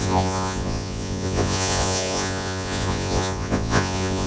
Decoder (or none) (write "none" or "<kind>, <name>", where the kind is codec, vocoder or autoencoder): vocoder, Vocos